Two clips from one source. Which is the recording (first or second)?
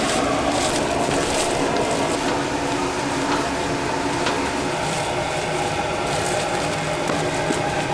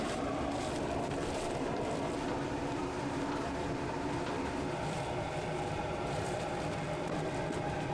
first